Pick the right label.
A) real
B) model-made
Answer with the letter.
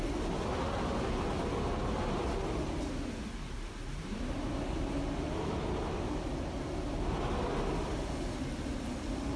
A